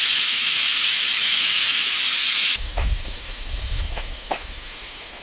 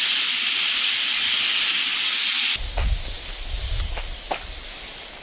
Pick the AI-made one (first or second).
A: first